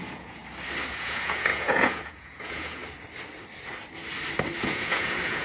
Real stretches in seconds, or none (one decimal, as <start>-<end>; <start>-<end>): 0.4-0.9; 2.8-4.6

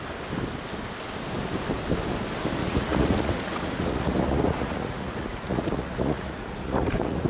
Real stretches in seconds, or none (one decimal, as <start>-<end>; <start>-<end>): 0.0-2.6

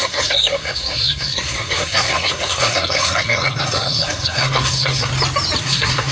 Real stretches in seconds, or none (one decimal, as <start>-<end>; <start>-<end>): 5.1-5.6

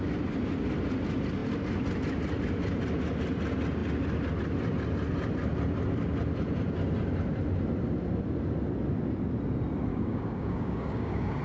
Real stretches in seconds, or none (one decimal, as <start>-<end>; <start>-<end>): 0.0-9.9